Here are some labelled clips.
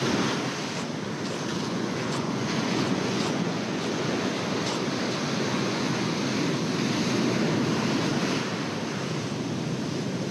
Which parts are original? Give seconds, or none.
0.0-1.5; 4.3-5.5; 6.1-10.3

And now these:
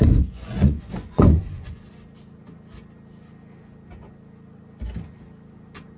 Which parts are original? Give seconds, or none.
1.8-6.0

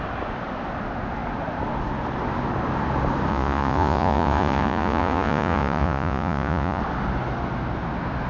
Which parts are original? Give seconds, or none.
0.0-3.3; 6.8-8.3

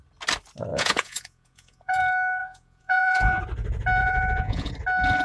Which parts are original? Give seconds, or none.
0.0-0.7; 2.0-2.4; 3.4-4.0; 4.7-5.2

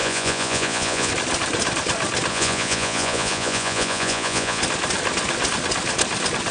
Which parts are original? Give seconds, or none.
1.1-2.3; 4.6-6.5

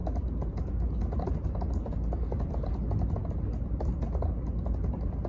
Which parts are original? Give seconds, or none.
0.0-5.3